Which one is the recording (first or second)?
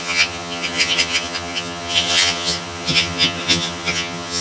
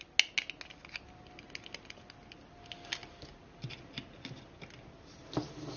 second